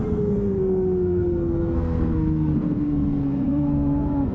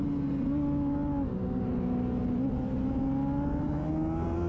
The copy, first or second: first